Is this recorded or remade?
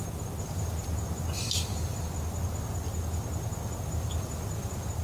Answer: recorded